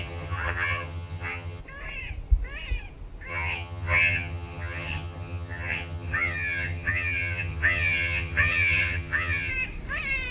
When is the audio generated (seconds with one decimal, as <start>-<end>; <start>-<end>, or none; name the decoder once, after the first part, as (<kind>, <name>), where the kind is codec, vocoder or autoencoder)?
0.0-1.6 (vocoder, HiFi-GAN); 3.3-9.5